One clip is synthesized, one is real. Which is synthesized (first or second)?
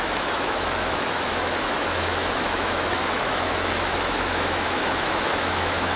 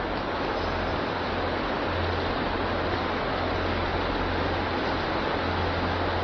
first